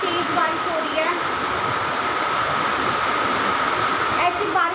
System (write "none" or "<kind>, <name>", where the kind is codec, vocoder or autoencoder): vocoder, BigVGAN v2